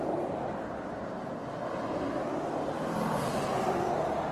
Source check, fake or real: real